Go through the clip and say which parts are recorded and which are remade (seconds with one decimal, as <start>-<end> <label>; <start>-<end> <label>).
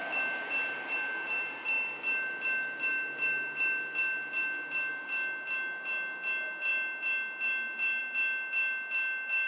0.0-9.5 recorded